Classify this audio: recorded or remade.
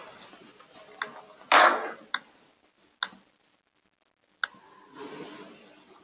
recorded